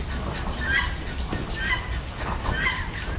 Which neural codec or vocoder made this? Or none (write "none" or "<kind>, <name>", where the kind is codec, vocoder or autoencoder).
none